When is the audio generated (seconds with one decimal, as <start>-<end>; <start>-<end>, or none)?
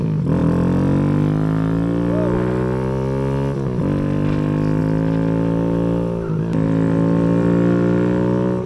none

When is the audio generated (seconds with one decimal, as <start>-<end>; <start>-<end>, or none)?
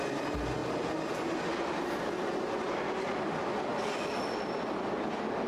none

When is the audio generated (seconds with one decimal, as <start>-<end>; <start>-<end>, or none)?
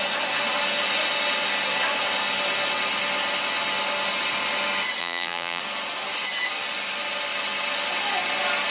5.0-5.6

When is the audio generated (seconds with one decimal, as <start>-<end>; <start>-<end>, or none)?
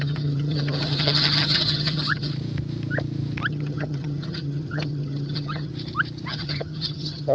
0.0-2.3; 3.5-5.7; 6.3-7.3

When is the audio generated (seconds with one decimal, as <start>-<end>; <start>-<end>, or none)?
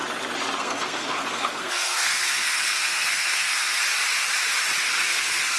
0.6-3.8; 4.8-5.6